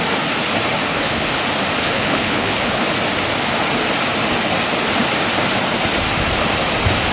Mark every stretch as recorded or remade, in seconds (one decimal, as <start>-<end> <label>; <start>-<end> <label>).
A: 0.0-0.9 recorded; 0.9-1.4 remade; 1.4-1.8 recorded; 1.8-2.8 remade; 2.8-7.1 recorded